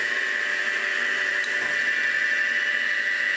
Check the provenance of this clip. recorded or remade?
recorded